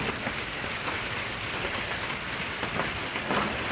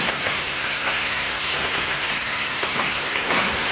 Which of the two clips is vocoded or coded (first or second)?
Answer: second